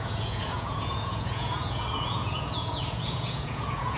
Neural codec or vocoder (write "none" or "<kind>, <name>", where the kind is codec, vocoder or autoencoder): vocoder, Vocos